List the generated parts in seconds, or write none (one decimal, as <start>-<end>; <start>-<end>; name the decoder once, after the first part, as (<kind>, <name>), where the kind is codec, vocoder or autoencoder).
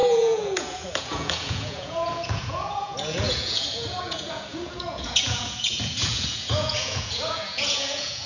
0.0-8.3 (vocoder, Vocos)